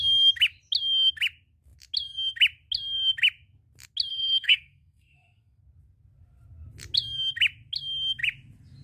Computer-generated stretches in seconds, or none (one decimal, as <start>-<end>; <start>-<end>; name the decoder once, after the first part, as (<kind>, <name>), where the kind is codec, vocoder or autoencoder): 4.1-5.6 (codec, SNAC)